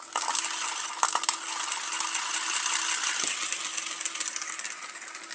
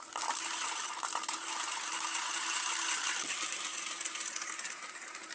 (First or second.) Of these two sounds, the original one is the first